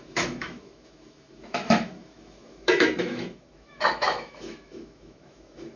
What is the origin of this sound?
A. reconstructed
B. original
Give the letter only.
A